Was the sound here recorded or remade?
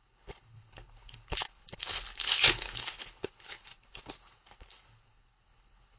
remade